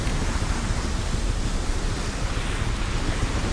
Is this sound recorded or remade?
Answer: recorded